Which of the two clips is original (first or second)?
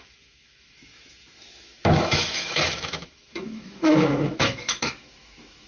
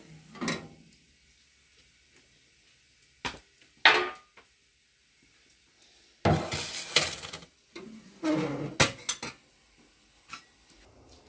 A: second